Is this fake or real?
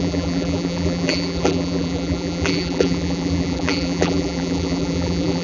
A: fake